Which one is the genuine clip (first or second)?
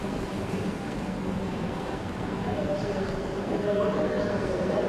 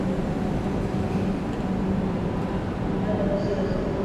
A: second